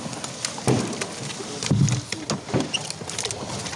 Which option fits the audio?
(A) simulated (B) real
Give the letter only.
B